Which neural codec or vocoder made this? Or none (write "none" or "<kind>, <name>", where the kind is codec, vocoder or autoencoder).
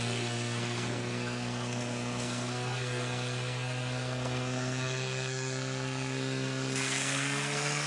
codec, SNAC